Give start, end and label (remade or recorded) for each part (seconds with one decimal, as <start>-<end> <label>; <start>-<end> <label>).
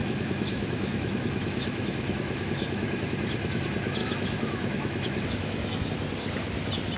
0.0-3.0 remade; 3.0-4.0 recorded; 4.0-5.9 remade; 5.9-7.0 recorded